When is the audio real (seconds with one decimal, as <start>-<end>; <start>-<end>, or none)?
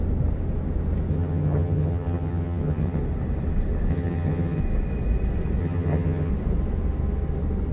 0.0-1.1; 3.0-3.9; 4.6-5.6; 6.3-7.7